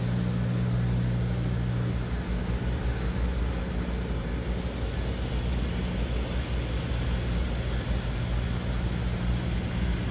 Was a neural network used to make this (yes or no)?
no